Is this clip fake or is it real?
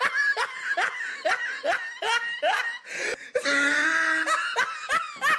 real